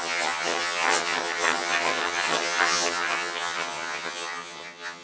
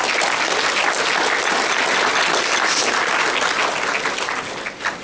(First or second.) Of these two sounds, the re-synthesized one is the first